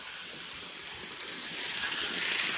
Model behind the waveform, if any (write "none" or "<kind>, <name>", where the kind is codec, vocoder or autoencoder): none